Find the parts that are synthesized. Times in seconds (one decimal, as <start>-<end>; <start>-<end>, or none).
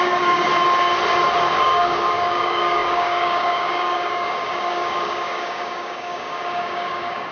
0.0-0.5; 1.4-7.3